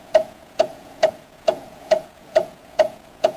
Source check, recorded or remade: remade